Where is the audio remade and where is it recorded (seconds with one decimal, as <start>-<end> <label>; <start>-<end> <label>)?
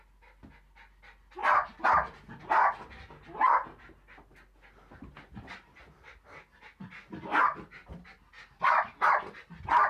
0.0-9.9 recorded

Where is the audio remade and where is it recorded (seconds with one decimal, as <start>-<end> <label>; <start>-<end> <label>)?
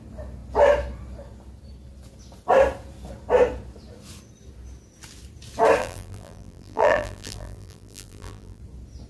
0.0-5.8 recorded; 5.8-8.6 remade; 8.6-9.1 recorded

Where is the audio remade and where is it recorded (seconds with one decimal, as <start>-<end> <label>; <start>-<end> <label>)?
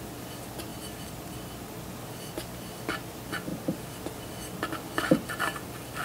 0.0-0.7 recorded; 0.7-1.3 remade; 1.3-3.5 recorded; 3.5-4.0 remade; 4.0-6.0 recorded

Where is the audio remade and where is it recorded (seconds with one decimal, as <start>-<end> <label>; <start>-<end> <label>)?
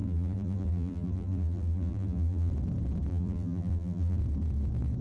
0.0-2.5 remade; 2.5-3.1 recorded; 3.1-4.2 remade; 4.2-5.0 recorded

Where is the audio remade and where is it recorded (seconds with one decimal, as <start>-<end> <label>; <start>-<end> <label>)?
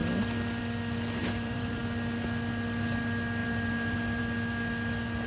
0.0-1.2 recorded; 1.2-1.8 remade; 1.8-3.4 recorded; 3.4-4.2 remade; 4.2-5.3 recorded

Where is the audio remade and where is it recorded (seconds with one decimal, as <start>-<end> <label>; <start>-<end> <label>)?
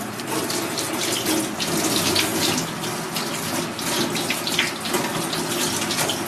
0.0-2.3 recorded; 2.3-2.8 remade; 2.8-6.3 recorded